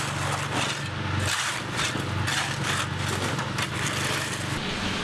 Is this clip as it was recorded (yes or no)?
yes